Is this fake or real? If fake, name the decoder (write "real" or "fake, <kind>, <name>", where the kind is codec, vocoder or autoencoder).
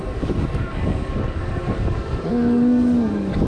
fake, codec, DAC